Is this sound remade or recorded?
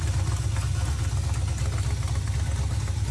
recorded